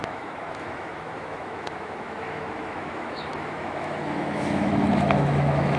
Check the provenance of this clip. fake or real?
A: fake